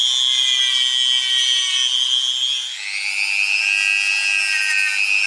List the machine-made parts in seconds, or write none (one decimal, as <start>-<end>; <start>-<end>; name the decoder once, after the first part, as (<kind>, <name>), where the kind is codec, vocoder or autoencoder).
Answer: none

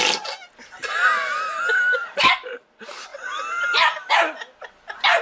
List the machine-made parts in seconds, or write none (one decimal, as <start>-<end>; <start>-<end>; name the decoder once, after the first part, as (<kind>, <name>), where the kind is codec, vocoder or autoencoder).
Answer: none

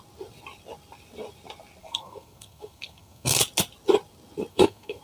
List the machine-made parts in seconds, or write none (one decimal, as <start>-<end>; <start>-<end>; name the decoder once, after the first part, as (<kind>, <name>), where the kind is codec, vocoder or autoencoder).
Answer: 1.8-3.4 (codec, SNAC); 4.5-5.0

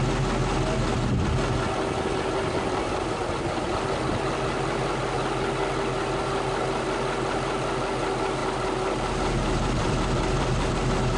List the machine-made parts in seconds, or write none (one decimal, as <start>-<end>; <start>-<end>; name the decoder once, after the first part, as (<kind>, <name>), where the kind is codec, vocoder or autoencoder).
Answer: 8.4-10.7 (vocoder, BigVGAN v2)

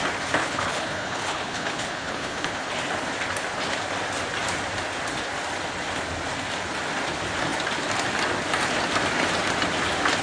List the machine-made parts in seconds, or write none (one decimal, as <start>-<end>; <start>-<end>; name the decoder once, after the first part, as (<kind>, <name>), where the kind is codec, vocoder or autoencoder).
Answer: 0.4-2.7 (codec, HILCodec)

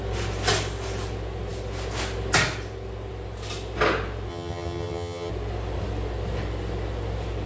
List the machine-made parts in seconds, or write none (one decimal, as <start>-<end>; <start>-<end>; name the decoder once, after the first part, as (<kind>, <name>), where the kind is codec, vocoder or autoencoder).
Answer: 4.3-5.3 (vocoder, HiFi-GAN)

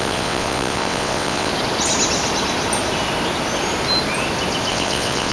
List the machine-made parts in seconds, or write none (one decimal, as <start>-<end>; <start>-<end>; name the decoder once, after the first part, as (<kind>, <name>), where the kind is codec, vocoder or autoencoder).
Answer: 0.0-1.5 (vocoder, WaveNeXt); 4.7-5.3